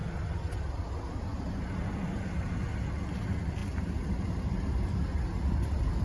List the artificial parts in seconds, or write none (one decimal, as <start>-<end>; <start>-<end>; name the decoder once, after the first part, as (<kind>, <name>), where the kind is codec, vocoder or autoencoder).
none